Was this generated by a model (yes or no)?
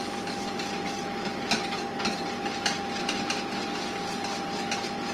no